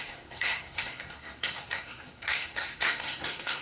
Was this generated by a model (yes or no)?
yes